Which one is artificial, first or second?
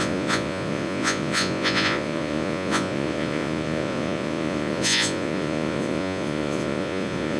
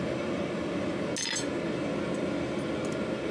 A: first